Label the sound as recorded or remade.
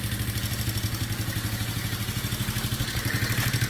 recorded